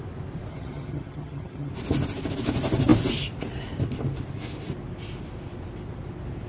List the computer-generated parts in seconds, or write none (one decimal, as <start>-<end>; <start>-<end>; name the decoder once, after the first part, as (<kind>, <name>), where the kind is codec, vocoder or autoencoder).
0.5-1.7 (vocoder, HiFi-GAN)